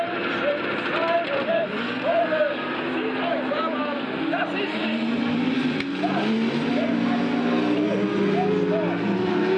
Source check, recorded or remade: recorded